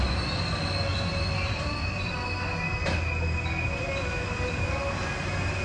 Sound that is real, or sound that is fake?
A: real